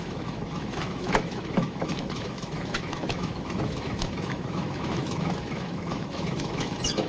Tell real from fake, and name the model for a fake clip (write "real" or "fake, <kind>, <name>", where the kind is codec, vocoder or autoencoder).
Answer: fake, autoencoder, DAC-VAE